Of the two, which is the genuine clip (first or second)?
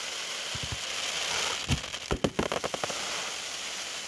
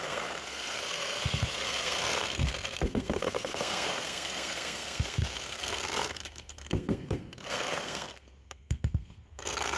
first